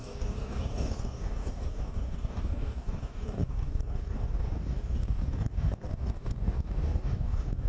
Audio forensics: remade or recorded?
remade